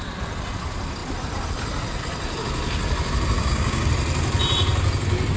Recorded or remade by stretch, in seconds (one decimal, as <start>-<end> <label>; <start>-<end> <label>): 0.0-3.4 recorded; 3.4-3.9 remade; 3.9-5.4 recorded

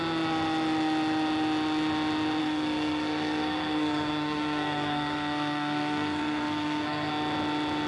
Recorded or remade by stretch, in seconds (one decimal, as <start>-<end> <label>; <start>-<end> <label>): 0.0-2.4 recorded; 2.4-7.1 remade; 7.1-7.9 recorded

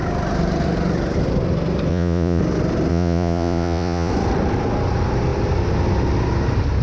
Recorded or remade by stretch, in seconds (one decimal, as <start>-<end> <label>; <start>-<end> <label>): 0.0-1.9 recorded; 1.9-2.4 remade; 2.4-2.9 recorded; 2.9-4.1 remade; 4.1-6.8 recorded